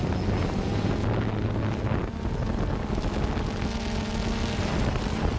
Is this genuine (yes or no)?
yes